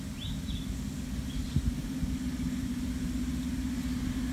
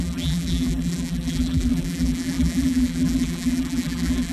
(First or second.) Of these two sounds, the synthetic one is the second